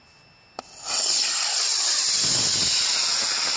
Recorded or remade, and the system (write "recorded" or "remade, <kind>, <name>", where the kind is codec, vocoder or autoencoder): recorded